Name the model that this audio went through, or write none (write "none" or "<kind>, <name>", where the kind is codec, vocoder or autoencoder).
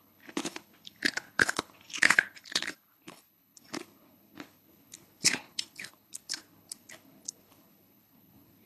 codec, HILCodec